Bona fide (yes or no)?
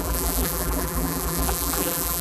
no